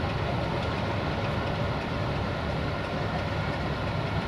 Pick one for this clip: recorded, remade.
recorded